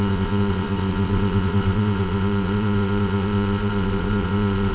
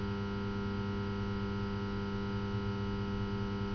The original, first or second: second